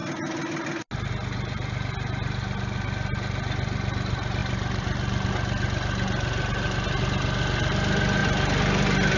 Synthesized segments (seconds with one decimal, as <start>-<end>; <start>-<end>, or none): 4.4-5.3